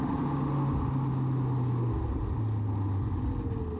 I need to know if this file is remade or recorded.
recorded